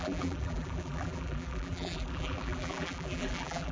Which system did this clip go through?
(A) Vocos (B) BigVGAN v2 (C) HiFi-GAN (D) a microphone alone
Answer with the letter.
B